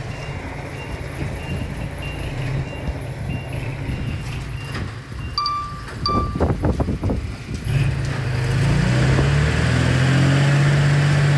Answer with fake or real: real